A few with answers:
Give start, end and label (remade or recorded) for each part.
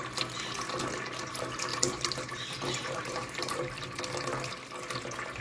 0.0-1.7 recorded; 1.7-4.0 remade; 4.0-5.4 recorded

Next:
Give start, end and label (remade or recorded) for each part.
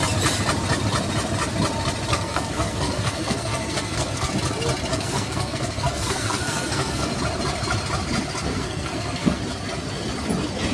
0.0-2.1 recorded; 2.1-4.3 remade; 4.3-4.9 recorded; 4.9-7.1 remade; 7.1-8.5 recorded; 8.5-9.4 remade; 9.4-10.7 recorded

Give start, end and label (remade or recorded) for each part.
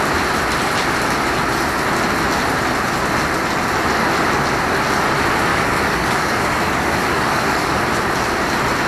0.0-5.5 recorded; 5.5-7.8 remade; 7.8-8.9 recorded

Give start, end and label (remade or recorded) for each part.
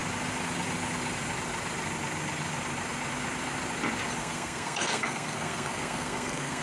0.0-4.2 recorded; 4.2-6.6 remade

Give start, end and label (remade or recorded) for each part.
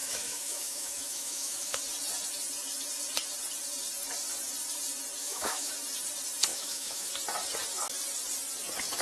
0.0-1.8 remade; 1.8-5.2 recorded; 5.2-5.7 remade; 5.7-6.5 recorded; 6.5-7.1 remade; 7.1-9.0 recorded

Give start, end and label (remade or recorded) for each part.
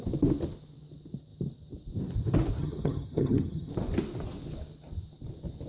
0.0-2.6 recorded; 2.6-3.7 remade; 3.7-5.7 recorded